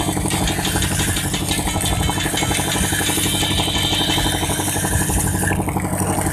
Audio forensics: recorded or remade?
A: recorded